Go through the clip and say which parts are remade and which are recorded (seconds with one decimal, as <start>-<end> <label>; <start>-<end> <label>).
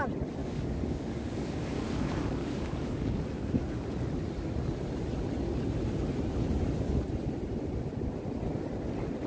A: 0.0-0.4 recorded; 0.4-3.2 remade; 3.2-9.3 recorded